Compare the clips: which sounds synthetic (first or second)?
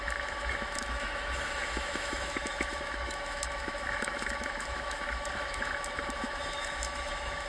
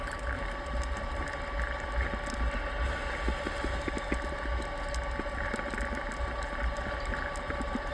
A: first